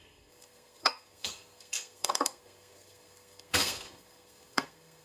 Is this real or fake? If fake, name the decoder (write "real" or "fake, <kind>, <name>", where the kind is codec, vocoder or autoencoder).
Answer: fake, codec, SNAC